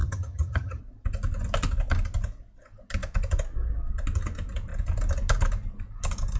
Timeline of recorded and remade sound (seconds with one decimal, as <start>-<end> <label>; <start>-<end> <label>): 0.0-0.8 remade; 0.8-6.4 recorded